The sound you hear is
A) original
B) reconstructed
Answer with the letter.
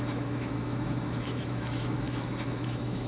B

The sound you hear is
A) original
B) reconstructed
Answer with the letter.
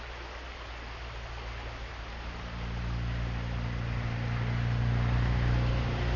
A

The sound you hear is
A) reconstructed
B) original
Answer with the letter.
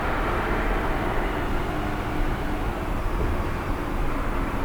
B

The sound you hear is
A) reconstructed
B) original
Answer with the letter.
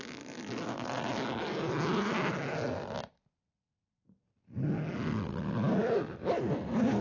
B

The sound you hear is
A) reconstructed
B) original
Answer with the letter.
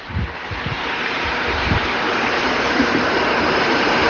A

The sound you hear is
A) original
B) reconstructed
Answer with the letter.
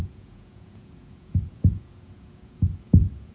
B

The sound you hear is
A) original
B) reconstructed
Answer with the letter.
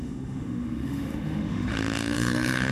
B